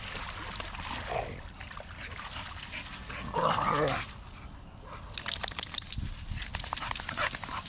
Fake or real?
real